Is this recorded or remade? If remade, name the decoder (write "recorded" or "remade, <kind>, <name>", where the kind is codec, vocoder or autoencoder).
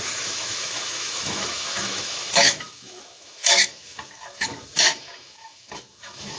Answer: remade, autoencoder, DAC-VAE